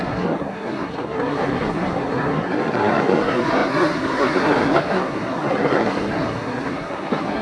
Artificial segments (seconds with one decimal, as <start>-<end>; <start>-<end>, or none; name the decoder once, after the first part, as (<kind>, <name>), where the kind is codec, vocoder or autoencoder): 0.0-7.4 (codec, SNAC)